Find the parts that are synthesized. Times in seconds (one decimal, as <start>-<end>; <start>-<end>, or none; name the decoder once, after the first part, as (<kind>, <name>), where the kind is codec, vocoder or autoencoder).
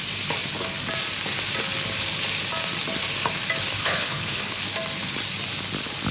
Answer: 3.8-4.6 (codec, HILCodec)